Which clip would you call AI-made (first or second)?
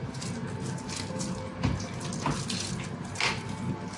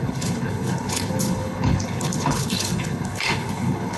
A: second